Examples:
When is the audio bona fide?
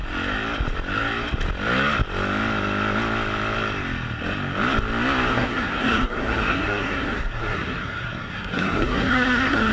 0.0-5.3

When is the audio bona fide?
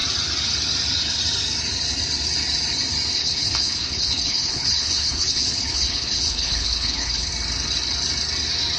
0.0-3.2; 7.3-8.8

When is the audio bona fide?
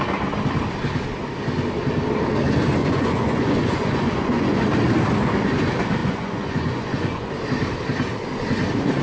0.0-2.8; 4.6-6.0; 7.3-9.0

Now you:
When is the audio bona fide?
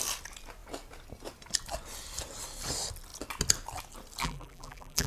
0.0-4.2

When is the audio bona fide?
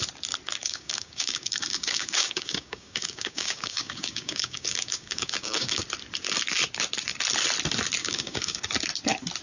0.0-0.6; 5.8-8.0; 8.6-9.4